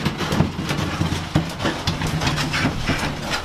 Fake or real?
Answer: real